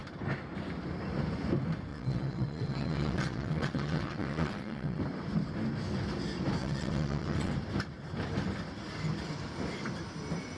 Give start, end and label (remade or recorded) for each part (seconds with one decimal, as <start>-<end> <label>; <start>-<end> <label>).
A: 0.0-1.9 recorded; 1.9-5.0 remade; 5.0-6.6 recorded; 6.6-7.5 remade; 7.5-10.6 recorded